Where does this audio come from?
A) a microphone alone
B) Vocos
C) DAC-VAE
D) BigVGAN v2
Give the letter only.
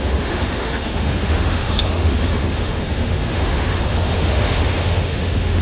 C